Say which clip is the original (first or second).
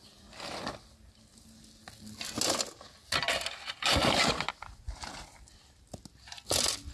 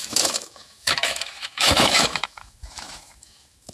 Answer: first